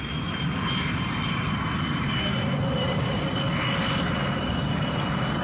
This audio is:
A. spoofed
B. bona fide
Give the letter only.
B